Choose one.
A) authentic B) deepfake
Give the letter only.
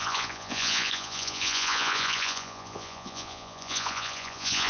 B